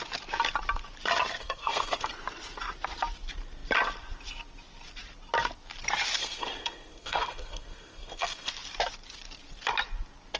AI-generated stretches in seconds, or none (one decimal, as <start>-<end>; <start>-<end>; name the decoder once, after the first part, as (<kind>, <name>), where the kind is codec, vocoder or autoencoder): 1.4-2.1 (codec, SNAC); 6.2-8.5